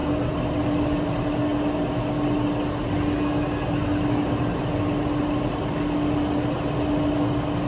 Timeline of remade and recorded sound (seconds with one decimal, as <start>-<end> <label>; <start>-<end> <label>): 0.0-7.7 recorded